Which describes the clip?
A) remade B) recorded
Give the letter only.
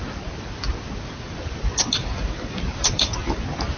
B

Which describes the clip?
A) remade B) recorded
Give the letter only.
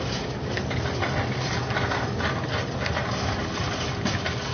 B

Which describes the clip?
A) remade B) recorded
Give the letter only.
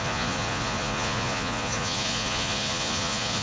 A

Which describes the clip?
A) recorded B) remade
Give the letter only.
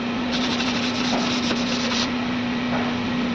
A